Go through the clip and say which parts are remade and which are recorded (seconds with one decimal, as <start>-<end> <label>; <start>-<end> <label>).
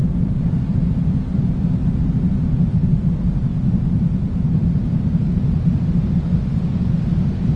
0.0-2.4 remade; 2.4-4.2 recorded; 4.2-7.0 remade; 7.0-7.6 recorded